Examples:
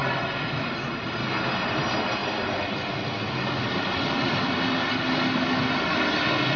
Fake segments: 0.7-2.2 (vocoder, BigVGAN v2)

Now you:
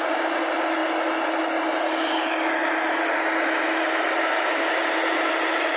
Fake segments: none

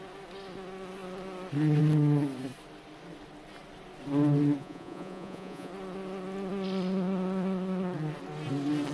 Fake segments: 4.6-5.7 (vocoder, Vocos)

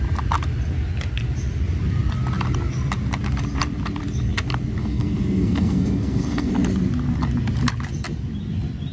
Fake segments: 4.8-6.5 (codec, SNAC)

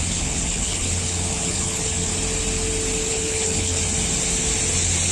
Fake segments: 0.0-2.1 (codec, HILCodec); 3.1-3.8

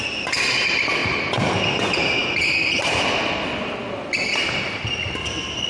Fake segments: none